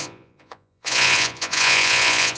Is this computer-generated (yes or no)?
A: yes